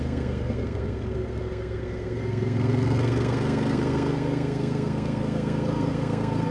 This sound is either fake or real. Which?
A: fake